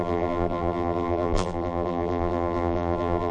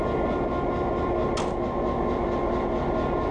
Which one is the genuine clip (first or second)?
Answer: second